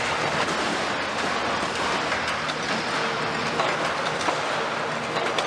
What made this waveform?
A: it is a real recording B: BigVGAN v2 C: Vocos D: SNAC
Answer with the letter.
A